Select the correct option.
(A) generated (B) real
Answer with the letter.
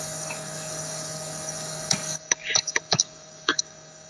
A